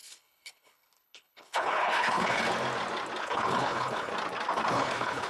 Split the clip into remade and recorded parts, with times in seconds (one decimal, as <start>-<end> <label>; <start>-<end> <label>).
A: 0.0-2.4 remade; 2.4-3.2 recorded; 3.2-4.1 remade; 4.1-4.7 recorded; 4.7-5.3 remade